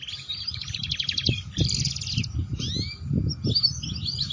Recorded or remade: recorded